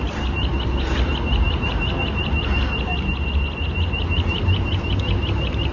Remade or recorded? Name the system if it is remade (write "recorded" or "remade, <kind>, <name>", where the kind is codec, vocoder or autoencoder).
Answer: recorded